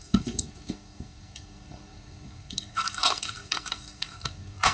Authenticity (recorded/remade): remade